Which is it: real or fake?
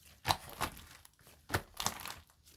real